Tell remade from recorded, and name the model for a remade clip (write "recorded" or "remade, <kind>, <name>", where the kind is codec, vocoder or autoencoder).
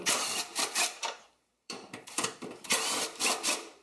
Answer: remade, vocoder, BigVGAN v2